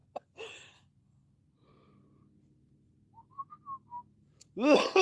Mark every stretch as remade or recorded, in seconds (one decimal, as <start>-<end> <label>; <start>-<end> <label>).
0.0-5.0 recorded